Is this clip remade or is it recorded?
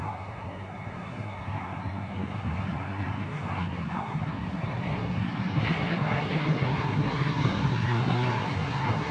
remade